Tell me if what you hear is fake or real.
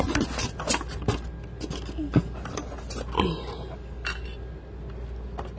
real